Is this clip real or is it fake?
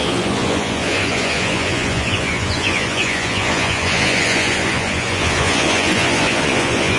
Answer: fake